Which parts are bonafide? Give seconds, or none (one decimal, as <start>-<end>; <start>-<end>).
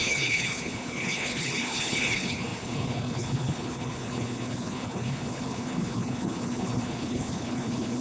none